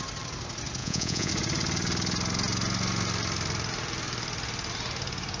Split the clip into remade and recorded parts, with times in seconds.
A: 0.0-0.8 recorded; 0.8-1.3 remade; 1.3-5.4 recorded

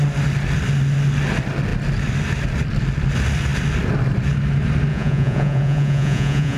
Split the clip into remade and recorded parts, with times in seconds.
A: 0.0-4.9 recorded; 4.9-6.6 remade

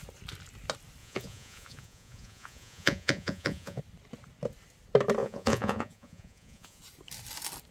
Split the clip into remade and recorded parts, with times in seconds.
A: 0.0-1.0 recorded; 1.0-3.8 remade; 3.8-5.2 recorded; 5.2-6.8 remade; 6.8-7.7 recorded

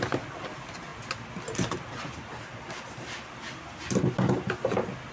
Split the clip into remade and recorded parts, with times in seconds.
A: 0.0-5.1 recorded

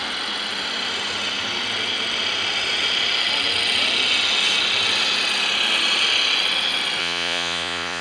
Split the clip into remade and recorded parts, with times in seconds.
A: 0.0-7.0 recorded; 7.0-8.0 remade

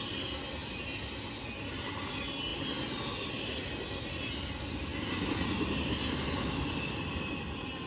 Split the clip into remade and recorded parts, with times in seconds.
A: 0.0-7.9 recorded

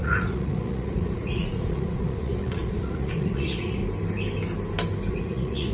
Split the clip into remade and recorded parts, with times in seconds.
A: 0.0-3.8 remade; 3.8-5.1 recorded; 5.1-5.7 remade